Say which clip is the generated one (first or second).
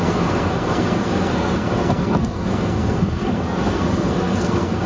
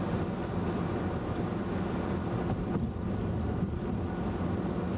first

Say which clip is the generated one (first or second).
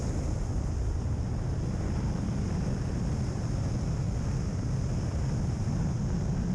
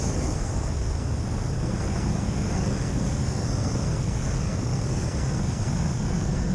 second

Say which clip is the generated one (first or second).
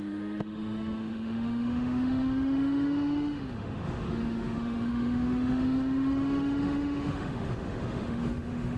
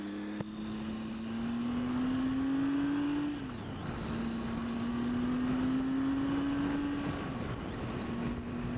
first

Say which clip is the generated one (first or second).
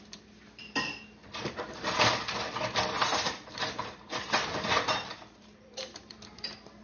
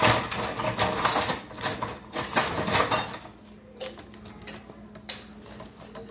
first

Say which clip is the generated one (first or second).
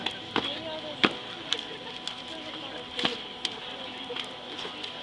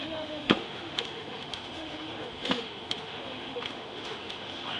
second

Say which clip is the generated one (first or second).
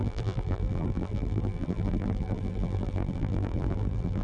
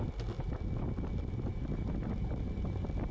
first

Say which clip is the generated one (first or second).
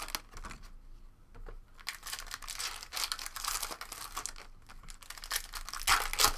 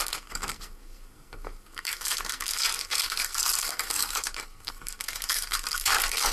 second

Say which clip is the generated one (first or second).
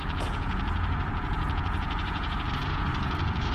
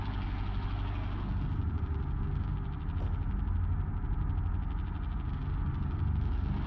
first